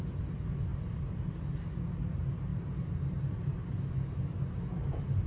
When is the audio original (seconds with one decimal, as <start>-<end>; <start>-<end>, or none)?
0.0-0.7; 1.7-2.5; 3.2-5.3